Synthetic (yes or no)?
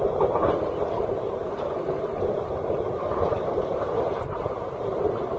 yes